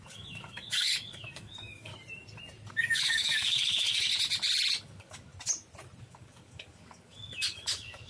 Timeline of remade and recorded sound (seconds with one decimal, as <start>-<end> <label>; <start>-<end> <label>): 0.0-1.9 remade; 1.9-2.7 recorded; 2.7-4.1 remade; 4.1-4.8 recorded; 4.8-5.3 remade; 5.3-6.0 recorded; 6.0-8.1 remade